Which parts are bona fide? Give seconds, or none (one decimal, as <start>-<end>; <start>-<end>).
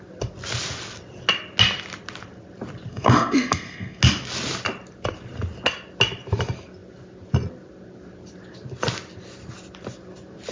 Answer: 0.0-2.9; 4.0-10.5